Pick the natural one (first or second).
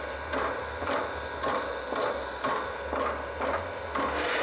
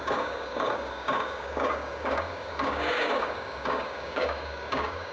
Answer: first